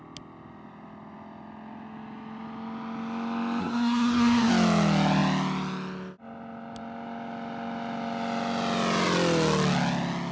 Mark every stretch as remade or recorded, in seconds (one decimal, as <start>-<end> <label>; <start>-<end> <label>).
0.0-3.6 recorded; 3.6-4.5 remade; 4.5-10.3 recorded